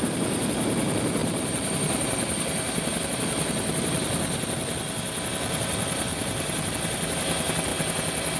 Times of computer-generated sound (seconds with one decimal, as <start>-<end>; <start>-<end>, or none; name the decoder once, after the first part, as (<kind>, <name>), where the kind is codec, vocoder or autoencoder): 1.2-3.0 (vocoder, BigVGAN v2); 6.1-6.7